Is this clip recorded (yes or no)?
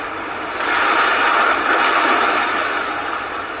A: yes